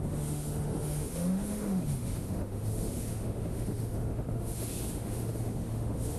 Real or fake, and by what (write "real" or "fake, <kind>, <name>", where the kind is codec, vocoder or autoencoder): fake, autoencoder, DAC-VAE